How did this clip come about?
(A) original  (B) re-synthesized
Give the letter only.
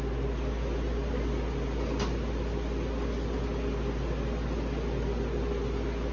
A